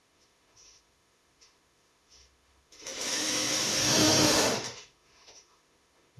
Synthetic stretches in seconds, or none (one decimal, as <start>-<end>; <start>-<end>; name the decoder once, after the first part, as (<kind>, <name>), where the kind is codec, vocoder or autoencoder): 0.0-6.2 (autoencoder, DAC-VAE)